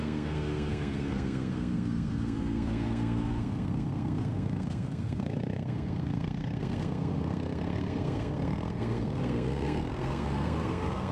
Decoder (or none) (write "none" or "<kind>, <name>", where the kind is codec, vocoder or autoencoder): codec, SNAC